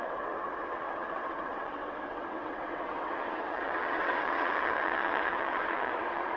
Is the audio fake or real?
fake